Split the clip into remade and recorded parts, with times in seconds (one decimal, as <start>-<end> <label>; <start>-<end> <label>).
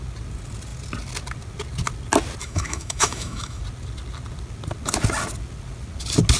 0.0-2.4 recorded; 2.4-3.6 remade; 3.6-6.4 recorded